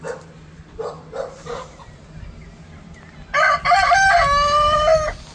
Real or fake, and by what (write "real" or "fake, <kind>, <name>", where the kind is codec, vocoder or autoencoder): real